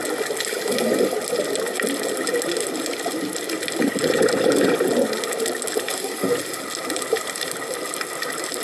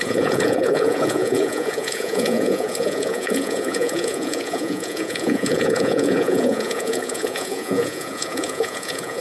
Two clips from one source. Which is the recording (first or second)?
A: first